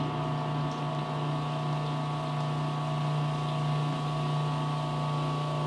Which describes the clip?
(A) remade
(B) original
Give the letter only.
B